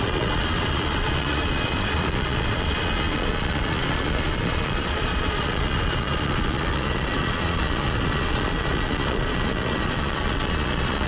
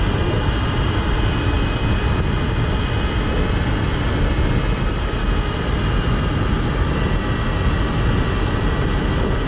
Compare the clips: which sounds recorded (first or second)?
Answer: second